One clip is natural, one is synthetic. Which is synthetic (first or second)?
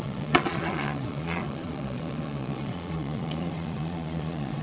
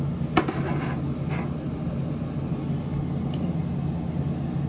first